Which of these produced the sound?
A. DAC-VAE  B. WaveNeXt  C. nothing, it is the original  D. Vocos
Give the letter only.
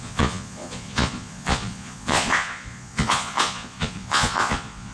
D